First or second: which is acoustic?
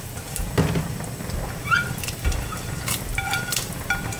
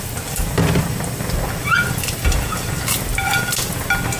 second